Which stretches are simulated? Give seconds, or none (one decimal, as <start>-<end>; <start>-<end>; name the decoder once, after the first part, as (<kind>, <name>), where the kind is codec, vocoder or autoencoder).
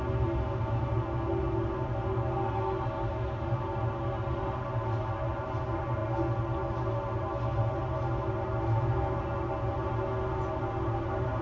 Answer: none